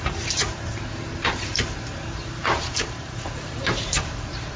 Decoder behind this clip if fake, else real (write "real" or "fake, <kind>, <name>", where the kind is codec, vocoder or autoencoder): fake, vocoder, BigVGAN v2